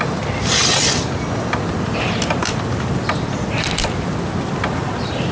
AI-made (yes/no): yes